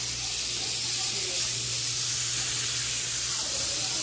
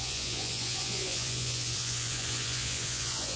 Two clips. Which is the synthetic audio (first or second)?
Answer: second